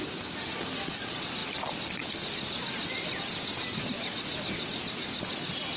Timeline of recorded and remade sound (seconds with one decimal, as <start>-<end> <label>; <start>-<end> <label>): 0.0-5.8 recorded